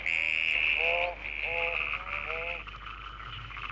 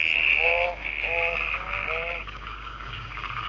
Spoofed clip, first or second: second